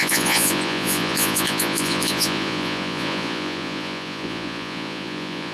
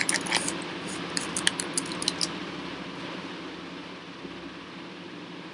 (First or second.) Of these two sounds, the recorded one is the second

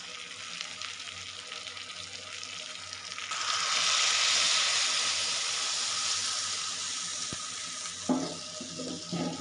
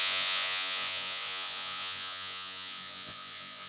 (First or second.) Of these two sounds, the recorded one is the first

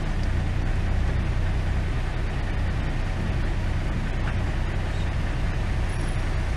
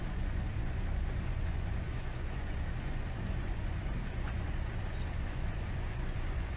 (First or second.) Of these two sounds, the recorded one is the first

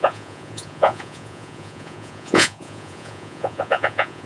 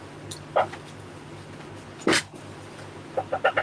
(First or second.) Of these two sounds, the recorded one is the second